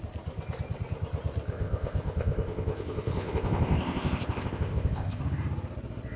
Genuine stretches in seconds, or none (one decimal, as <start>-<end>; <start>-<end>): 0.0-1.5; 5.2-6.2